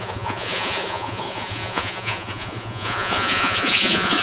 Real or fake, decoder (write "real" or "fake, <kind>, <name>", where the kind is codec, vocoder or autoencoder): fake, vocoder, Vocos